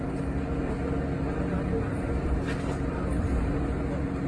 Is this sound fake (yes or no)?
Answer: no